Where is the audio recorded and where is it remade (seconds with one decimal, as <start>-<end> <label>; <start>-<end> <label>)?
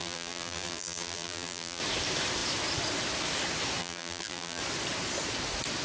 0.0-1.8 remade; 1.8-3.8 recorded; 3.8-4.6 remade; 4.6-5.8 recorded